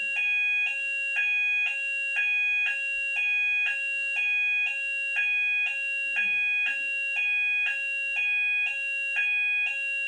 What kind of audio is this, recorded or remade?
recorded